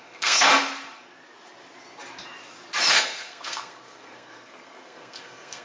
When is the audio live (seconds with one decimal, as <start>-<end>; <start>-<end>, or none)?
0.5-2.9